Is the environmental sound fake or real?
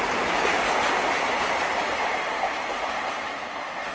real